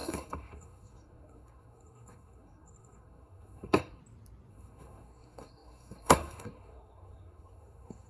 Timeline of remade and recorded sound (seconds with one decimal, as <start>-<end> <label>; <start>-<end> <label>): 0.0-4.0 remade; 4.0-4.5 recorded; 4.5-8.1 remade